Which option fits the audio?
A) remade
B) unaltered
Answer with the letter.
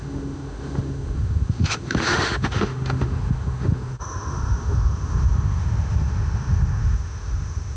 A